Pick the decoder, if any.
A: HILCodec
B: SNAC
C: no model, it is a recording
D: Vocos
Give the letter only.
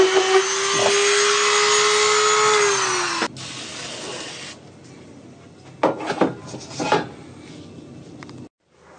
C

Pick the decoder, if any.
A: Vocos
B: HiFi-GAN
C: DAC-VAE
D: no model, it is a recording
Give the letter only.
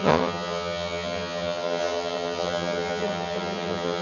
B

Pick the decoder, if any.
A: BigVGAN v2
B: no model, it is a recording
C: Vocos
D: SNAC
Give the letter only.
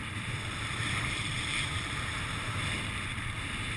A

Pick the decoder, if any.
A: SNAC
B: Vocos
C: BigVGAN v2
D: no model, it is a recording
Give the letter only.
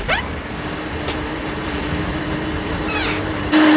C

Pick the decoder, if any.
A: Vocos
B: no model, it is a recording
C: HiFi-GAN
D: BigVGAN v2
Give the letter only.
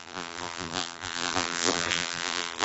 D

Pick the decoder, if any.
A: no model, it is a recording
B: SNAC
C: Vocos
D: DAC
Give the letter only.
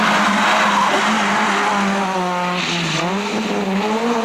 A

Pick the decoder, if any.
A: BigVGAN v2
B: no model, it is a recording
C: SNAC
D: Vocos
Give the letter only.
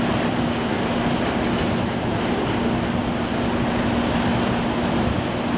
B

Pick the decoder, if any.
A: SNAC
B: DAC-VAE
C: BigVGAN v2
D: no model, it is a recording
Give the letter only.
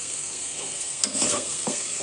A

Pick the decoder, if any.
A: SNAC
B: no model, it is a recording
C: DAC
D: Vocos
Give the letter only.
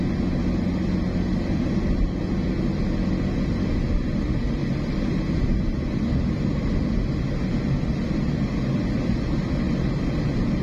B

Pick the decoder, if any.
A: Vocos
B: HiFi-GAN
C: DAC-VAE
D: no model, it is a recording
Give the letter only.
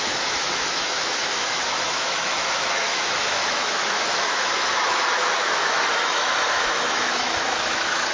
C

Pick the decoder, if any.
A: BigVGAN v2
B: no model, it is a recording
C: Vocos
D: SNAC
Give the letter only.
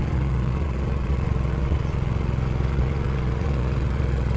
C